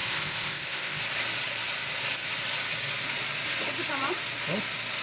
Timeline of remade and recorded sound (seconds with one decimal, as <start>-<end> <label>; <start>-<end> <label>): 0.0-1.0 remade; 1.0-5.0 recorded